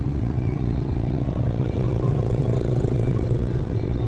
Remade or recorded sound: remade